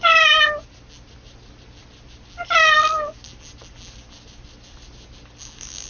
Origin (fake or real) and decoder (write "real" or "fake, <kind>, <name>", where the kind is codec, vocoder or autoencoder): real